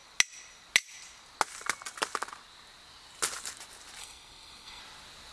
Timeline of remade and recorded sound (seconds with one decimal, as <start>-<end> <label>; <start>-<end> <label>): 0.0-4.0 recorded; 4.0-4.8 remade; 4.8-5.3 recorded